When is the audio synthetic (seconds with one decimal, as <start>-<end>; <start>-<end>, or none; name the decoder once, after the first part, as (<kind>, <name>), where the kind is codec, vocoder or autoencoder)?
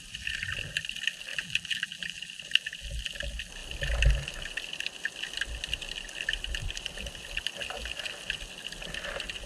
1.3-2.2 (vocoder, BigVGAN v2)